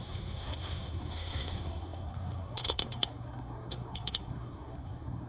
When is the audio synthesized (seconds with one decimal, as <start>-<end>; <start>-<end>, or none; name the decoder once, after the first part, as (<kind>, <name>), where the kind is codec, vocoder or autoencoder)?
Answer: 0.0-5.3 (codec, SNAC)